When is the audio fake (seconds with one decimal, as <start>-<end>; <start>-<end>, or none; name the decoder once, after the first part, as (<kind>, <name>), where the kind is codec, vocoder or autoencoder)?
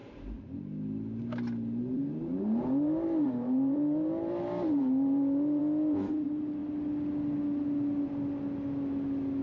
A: 0.0-0.6 (vocoder, BigVGAN v2); 1.8-5.6